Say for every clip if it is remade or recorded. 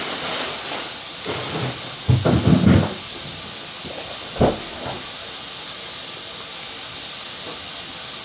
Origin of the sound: recorded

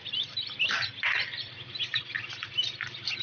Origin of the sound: recorded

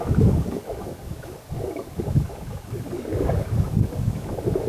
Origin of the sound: remade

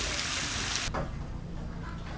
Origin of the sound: recorded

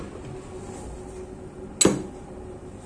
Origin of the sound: recorded